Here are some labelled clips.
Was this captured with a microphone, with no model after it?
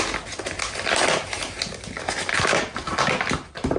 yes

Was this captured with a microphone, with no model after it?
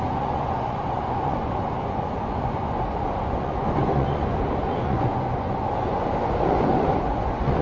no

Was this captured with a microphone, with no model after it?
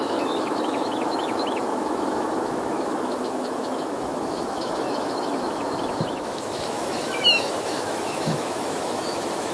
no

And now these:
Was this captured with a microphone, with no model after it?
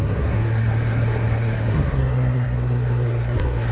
no